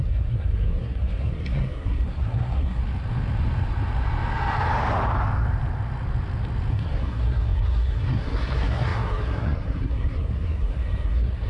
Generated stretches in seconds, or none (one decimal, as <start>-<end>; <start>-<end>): 0.0-2.8; 6.7-11.5